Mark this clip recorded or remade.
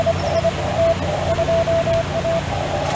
recorded